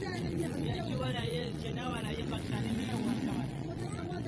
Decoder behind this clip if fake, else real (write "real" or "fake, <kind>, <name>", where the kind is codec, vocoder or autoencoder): fake, vocoder, Vocos